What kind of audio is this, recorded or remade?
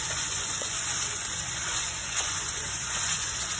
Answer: remade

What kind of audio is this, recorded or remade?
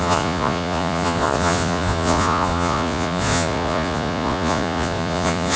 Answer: remade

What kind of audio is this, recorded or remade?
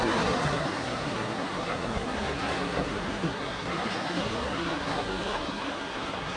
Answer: remade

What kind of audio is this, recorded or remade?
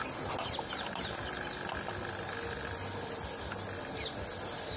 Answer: recorded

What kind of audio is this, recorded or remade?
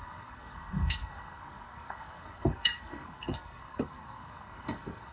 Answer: remade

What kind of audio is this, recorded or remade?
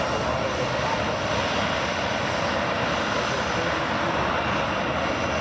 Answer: recorded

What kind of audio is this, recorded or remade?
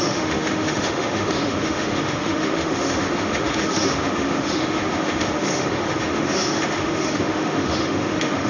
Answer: remade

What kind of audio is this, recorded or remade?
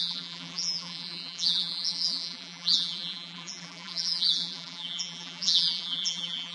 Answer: remade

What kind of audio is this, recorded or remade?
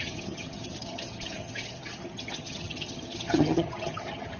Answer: remade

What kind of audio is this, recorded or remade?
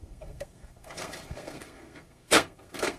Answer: remade